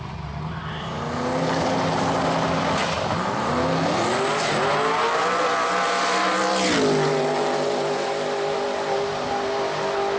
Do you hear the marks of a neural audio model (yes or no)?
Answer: no